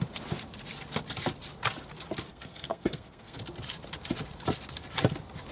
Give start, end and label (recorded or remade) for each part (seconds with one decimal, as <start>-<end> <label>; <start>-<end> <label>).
0.0-2.3 recorded; 2.3-3.4 remade; 3.4-5.5 recorded